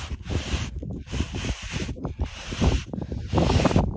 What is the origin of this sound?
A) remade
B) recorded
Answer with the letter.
A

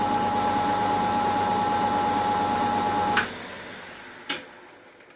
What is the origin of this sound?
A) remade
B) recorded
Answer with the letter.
B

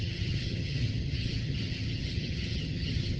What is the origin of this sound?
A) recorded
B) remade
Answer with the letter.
B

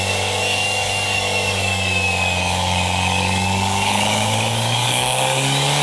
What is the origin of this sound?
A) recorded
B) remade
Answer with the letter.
B